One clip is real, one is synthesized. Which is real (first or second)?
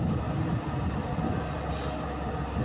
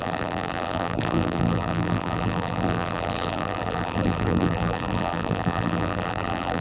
first